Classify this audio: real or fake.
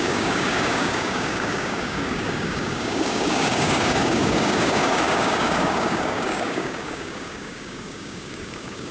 fake